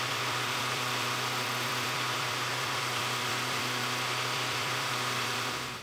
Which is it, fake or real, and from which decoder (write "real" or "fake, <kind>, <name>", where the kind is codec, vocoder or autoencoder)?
fake, vocoder, BigVGAN v2